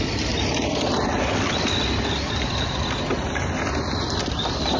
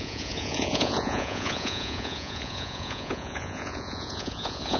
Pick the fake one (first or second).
second